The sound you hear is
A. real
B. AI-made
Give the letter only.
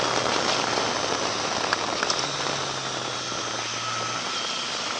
A